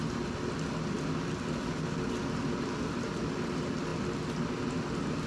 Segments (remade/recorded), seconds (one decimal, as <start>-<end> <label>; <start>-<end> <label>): 0.0-5.3 recorded